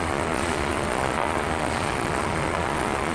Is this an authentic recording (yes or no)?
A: no